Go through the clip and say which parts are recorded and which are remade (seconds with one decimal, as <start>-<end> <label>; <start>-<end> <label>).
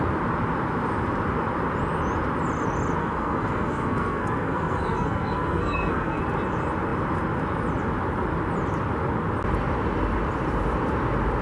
0.0-3.0 recorded; 3.0-6.2 remade; 6.2-11.4 recorded